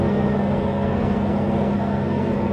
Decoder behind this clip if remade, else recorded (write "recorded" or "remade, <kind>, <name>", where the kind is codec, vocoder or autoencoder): remade, codec, SNAC